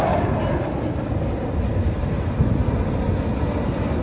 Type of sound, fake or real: real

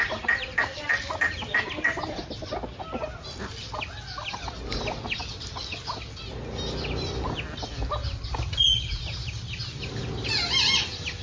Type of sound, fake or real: real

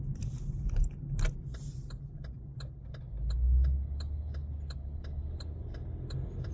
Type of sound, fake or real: real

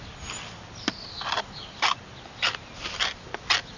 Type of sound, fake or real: real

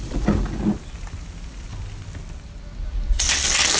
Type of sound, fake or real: real